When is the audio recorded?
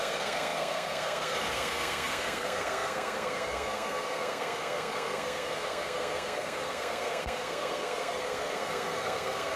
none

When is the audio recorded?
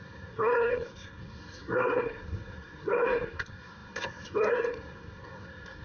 none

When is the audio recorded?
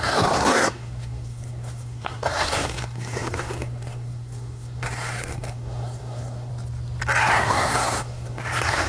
6.5-7.2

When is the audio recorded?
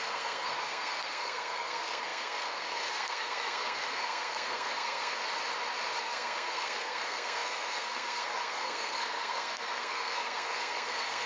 5.2-6.0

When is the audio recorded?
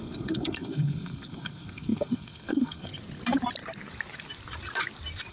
2.9-5.3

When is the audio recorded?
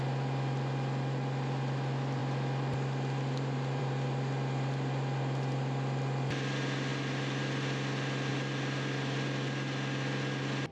0.0-10.7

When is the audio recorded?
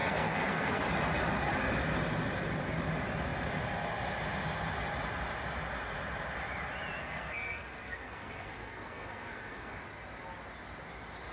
0.8-7.0; 9.8-11.3